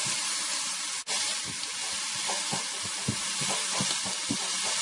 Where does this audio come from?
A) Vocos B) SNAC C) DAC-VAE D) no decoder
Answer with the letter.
D